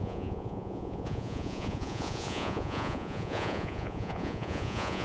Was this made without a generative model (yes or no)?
no